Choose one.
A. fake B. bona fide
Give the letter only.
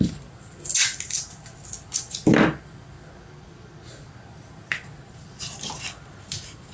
B